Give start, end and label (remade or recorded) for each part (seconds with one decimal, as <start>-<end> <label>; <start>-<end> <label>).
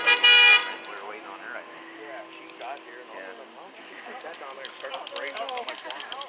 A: 0.0-6.3 recorded